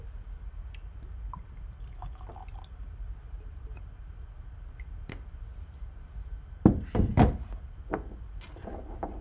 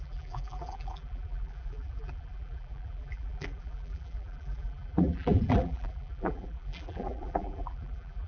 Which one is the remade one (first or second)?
second